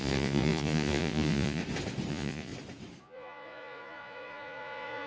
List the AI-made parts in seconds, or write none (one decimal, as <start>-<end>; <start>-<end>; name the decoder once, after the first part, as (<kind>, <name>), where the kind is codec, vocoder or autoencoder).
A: 0.0-1.6 (vocoder, Vocos); 2.1-2.5; 3.0-5.1